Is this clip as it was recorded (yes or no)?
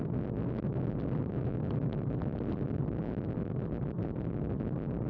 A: no